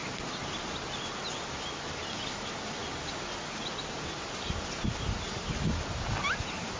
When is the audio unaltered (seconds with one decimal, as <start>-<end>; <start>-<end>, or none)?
0.0-6.8